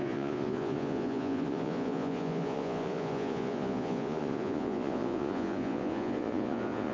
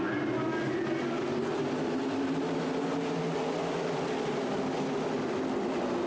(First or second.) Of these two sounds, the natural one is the second